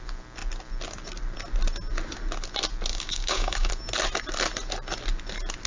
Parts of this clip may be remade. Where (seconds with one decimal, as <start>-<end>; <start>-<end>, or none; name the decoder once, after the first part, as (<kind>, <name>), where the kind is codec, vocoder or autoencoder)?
2.9-3.7 (codec, DAC)